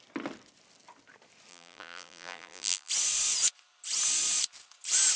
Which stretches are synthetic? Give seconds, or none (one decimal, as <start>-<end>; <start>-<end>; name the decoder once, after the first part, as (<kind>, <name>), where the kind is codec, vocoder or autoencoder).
1.5-2.9 (vocoder, BigVGAN v2)

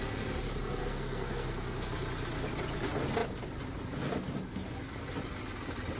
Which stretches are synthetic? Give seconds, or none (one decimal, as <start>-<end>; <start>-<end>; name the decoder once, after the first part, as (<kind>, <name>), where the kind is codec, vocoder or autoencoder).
0.8-1.9 (codec, SNAC)

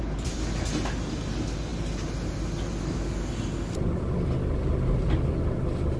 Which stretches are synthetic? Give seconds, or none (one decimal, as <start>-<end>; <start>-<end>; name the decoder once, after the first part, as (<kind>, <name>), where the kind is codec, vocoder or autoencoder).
none

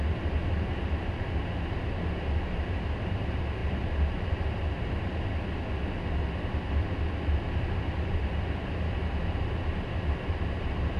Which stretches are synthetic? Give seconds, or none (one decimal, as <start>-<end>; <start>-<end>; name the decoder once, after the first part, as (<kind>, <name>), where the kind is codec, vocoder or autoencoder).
none

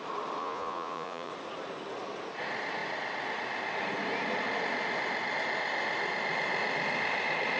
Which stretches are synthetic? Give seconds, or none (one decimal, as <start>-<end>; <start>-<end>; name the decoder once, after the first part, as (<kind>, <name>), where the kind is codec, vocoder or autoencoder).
0.4-1.3 (vocoder, Vocos)